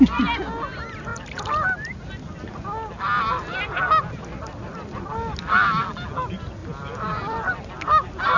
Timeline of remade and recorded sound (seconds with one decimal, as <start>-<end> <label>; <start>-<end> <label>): 0.0-6.6 recorded; 6.6-7.5 remade; 7.5-8.4 recorded